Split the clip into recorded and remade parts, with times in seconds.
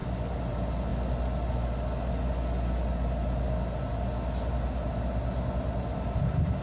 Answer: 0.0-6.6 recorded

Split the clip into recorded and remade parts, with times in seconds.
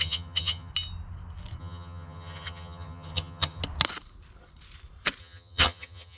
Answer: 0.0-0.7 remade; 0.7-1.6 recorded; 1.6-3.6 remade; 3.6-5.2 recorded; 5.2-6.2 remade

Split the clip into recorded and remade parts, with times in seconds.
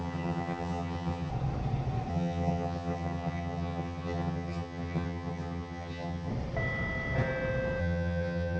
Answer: 0.0-1.3 remade; 1.3-2.1 recorded; 2.1-6.3 remade; 6.3-7.8 recorded; 7.8-8.6 remade